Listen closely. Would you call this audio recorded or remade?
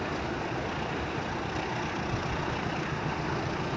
recorded